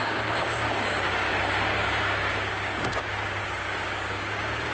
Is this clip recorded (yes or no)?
no